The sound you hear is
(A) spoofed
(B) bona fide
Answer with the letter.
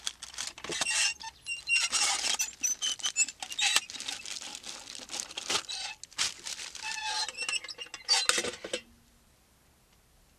B